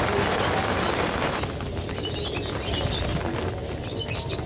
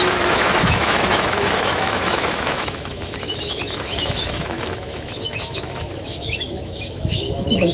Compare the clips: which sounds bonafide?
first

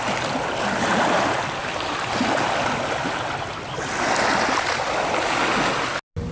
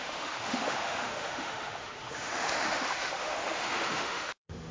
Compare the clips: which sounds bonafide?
first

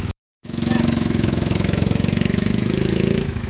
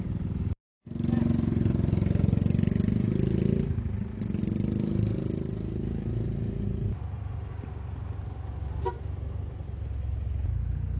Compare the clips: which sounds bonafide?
second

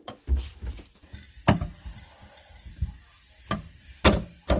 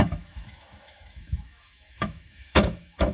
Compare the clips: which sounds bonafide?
first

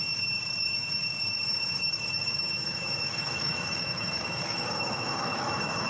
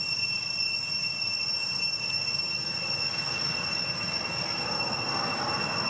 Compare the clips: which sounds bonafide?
second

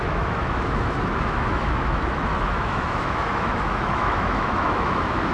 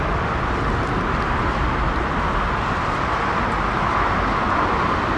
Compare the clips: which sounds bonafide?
second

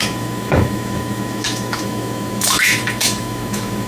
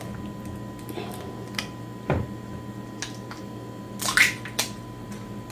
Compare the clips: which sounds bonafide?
second